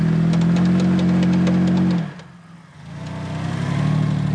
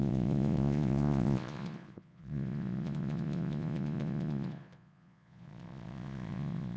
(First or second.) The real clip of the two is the first